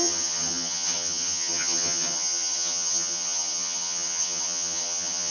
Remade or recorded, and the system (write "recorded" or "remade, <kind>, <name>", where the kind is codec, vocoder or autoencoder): remade, vocoder, HiFi-GAN